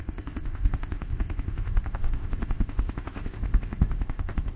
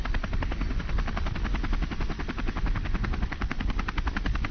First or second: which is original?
second